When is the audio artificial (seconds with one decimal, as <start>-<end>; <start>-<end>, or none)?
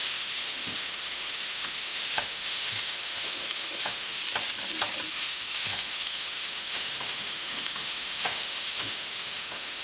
0.0-4.2; 5.1-9.8